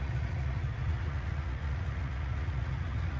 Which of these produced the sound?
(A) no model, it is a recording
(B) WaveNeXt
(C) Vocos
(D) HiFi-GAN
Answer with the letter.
C